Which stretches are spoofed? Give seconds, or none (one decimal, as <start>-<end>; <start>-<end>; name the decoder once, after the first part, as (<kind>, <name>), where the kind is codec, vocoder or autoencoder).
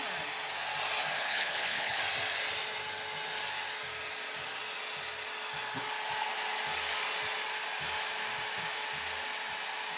1.2-2.0 (codec, HILCodec)